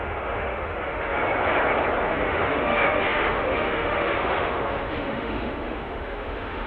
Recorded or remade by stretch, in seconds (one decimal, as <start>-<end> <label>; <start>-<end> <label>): 0.0-1.2 remade; 1.2-2.0 recorded; 2.0-6.7 remade